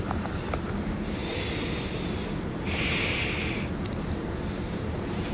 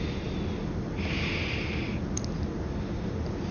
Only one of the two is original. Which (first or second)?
second